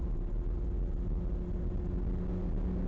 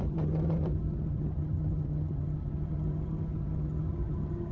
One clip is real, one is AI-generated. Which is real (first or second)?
first